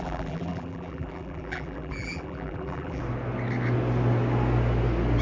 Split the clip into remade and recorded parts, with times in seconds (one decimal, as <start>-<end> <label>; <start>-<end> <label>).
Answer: 0.0-3.0 remade; 3.0-5.2 recorded

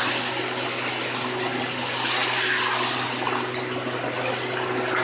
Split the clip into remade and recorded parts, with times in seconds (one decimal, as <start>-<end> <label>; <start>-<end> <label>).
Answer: 0.0-5.0 recorded

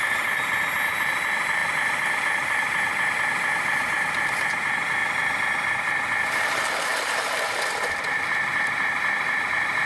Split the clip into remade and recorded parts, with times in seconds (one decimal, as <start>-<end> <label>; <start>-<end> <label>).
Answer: 0.0-5.0 remade; 5.0-5.7 recorded; 5.7-9.9 remade

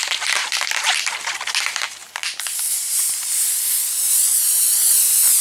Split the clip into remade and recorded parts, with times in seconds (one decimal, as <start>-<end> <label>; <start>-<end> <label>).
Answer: 0.0-0.4 recorded; 0.4-1.0 remade; 1.0-2.0 recorded; 2.0-4.7 remade; 4.7-5.4 recorded

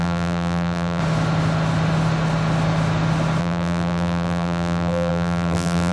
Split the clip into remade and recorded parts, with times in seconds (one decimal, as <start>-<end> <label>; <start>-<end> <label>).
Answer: 0.0-1.0 remade; 1.0-3.4 recorded; 3.4-5.9 remade